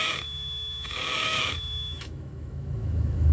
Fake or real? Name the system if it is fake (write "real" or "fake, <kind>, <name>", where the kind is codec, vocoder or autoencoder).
fake, autoencoder, DAC-VAE